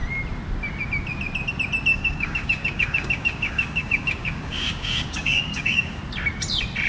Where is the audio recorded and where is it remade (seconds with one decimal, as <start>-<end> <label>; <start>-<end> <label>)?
0.0-1.9 recorded; 1.9-6.0 remade; 6.0-6.9 recorded